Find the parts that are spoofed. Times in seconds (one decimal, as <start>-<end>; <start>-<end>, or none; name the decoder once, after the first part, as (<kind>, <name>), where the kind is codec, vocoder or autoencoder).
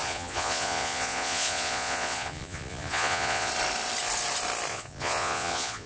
0.0-3.5 (vocoder, Vocos); 4.7-5.9